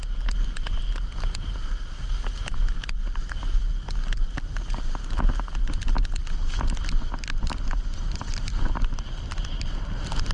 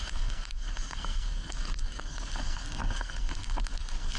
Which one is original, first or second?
first